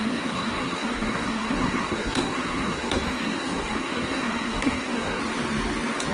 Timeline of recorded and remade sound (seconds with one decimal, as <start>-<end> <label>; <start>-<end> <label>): 0.0-5.2 remade; 5.2-6.1 recorded

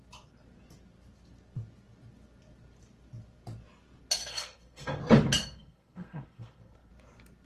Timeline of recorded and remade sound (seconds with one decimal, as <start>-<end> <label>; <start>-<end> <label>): 0.0-4.2 recorded; 4.2-5.0 remade; 5.0-5.4 recorded; 5.4-6.9 remade; 6.9-7.4 recorded

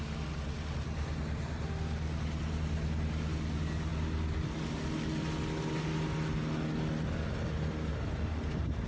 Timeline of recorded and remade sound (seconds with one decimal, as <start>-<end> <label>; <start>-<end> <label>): 0.0-8.9 recorded